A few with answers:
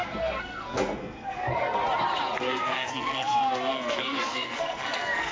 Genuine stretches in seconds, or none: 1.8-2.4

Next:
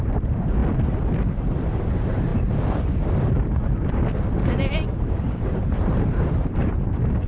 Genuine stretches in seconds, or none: 0.6-1.3